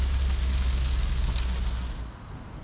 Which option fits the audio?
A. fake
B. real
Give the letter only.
B